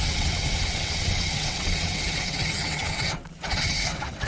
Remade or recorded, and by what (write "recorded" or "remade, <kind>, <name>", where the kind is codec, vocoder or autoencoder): remade, vocoder, WaveNeXt